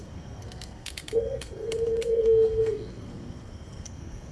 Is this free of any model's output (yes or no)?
no